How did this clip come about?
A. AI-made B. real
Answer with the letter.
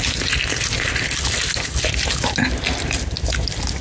B